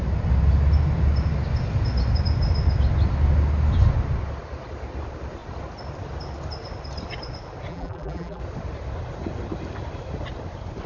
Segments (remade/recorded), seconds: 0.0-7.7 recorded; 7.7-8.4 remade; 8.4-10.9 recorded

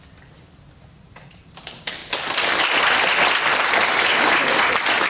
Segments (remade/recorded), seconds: 0.0-3.5 recorded; 3.5-4.4 remade; 4.4-5.1 recorded

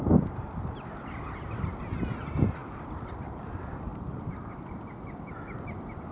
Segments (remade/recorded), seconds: 0.0-2.6 recorded; 2.6-3.1 remade; 3.1-3.9 recorded; 3.9-5.6 remade; 5.6-6.1 recorded

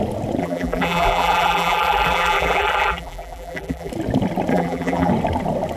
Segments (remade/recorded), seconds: 0.0-0.4 recorded; 0.4-3.9 remade; 3.9-4.5 recorded; 4.5-5.1 remade; 5.1-5.8 recorded